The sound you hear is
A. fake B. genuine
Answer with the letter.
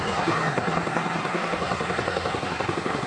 A